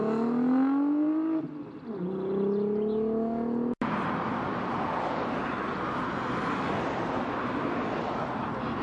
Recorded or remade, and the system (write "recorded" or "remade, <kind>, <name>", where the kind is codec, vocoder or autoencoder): recorded